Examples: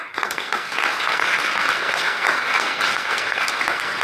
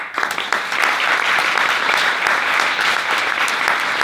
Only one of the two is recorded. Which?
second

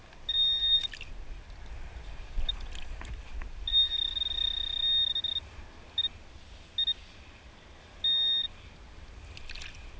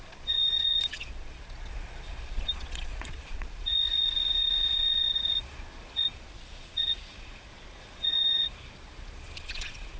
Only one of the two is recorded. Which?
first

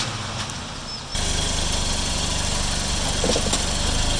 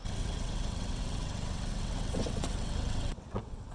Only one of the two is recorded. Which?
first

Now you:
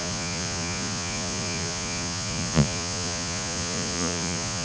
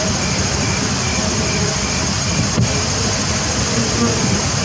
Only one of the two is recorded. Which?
second